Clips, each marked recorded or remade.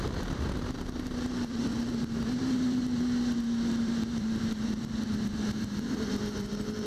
remade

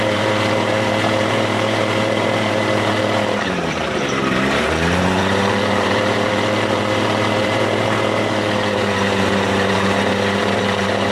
remade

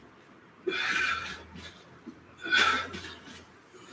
remade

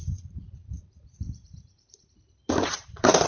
remade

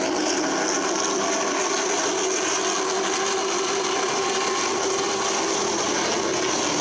recorded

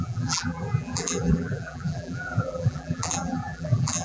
remade